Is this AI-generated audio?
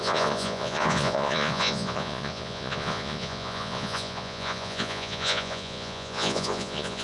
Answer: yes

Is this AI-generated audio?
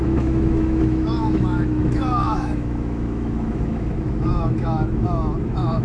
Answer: yes